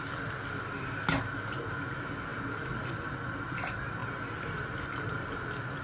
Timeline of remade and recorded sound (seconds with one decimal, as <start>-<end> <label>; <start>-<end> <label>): 0.0-5.8 recorded